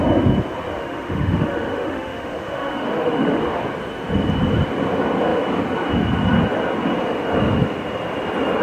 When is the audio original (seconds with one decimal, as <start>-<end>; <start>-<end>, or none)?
0.0-0.7; 3.6-8.6